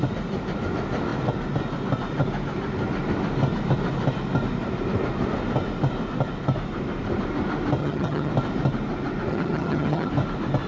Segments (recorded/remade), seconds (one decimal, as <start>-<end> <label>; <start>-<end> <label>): 0.0-7.8 recorded; 7.8-8.3 remade; 8.3-9.3 recorded; 9.3-10.1 remade; 10.1-10.7 recorded